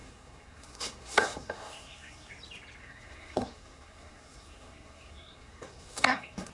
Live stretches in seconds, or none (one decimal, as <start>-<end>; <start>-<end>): 2.3-2.8